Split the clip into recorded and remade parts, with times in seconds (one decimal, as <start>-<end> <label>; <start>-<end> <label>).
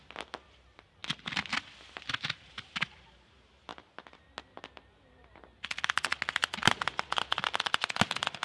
0.0-8.4 recorded